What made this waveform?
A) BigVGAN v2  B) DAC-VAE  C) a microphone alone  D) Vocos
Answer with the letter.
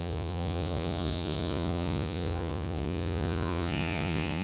D